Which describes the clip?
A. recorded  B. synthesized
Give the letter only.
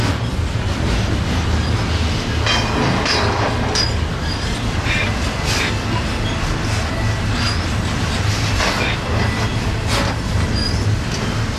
A